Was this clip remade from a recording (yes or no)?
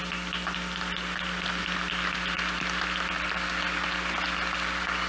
no